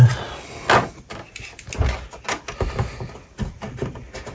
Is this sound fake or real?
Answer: real